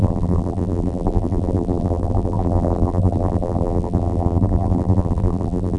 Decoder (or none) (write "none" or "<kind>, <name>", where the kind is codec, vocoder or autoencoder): vocoder, BigVGAN v2